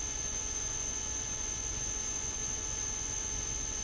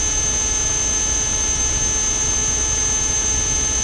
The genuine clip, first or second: second